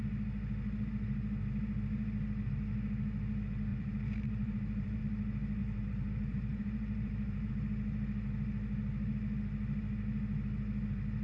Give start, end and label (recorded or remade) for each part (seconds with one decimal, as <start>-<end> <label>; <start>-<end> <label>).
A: 0.0-3.7 recorded; 3.7-5.0 remade; 5.0-5.6 recorded; 5.6-7.5 remade; 7.5-11.2 recorded